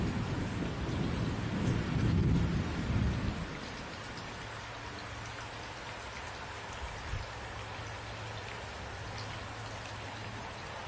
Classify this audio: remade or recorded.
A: recorded